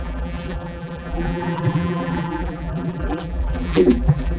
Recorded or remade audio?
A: remade